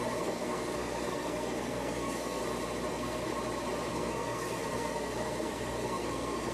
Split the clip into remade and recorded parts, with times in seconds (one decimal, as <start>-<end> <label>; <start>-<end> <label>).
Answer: 0.0-2.4 remade; 2.4-2.9 recorded; 2.9-3.3 remade; 3.3-3.9 recorded; 3.9-6.5 remade